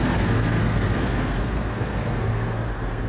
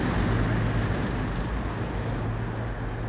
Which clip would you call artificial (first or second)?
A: first